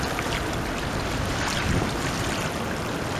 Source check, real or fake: real